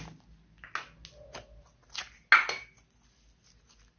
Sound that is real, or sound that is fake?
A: real